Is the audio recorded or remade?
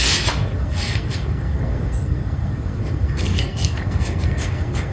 remade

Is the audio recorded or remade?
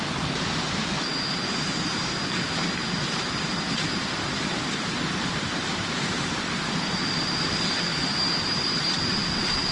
remade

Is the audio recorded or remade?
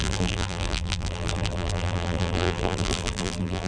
remade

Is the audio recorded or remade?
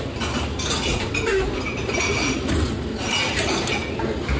recorded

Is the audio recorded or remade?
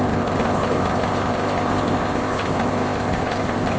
remade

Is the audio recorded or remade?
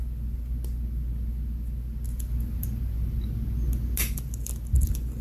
recorded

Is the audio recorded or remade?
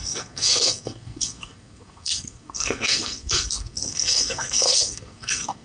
remade